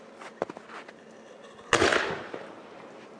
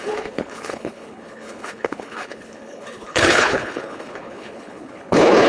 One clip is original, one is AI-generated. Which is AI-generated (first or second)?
second